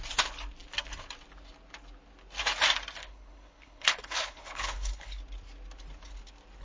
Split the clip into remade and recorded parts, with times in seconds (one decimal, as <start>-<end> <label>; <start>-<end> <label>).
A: 0.0-3.0 recorded; 3.0-5.2 remade; 5.2-6.6 recorded